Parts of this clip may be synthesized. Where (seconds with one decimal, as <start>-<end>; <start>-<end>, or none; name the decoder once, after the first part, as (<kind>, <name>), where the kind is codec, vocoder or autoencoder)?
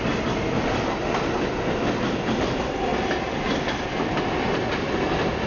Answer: none